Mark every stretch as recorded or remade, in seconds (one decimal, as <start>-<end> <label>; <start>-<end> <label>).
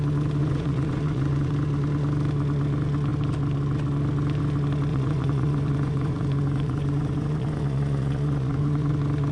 0.0-0.4 recorded; 0.4-1.5 remade; 1.5-4.9 recorded; 4.9-8.9 remade; 8.9-9.3 recorded